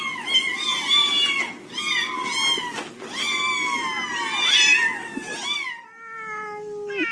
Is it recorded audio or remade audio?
recorded